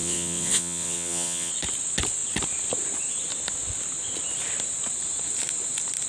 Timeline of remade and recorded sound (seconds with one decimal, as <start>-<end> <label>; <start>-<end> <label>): 0.0-1.5 remade; 1.5-6.1 recorded